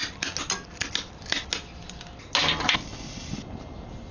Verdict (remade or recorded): recorded